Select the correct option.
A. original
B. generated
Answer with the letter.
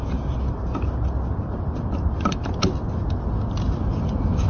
A